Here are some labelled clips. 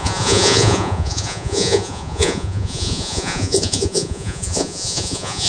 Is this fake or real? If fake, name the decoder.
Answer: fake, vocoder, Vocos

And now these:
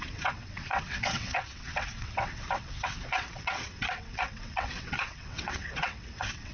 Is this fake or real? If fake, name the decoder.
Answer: fake, vocoder, WaveNeXt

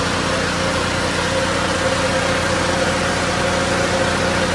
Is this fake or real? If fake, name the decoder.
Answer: real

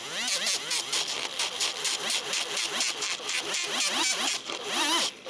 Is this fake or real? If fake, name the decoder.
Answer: real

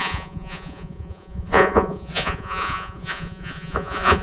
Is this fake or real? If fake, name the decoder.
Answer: fake, vocoder, Vocos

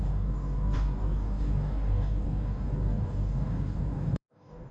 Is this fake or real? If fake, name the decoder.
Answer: fake, codec, DAC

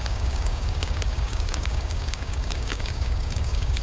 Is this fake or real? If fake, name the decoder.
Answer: fake, codec, DAC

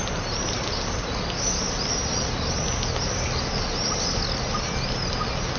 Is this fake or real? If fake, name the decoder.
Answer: real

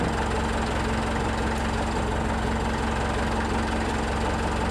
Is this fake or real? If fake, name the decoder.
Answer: real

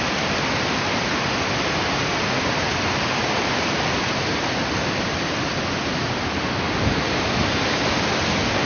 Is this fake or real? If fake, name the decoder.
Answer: real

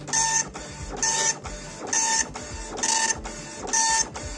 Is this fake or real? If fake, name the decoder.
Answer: real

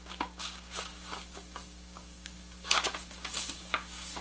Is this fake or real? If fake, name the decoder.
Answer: fake, codec, DAC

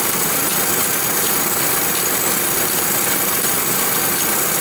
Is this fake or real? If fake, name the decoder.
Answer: fake, vocoder, BigVGAN v2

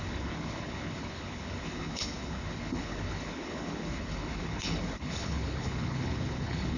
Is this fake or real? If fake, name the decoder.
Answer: fake, codec, HILCodec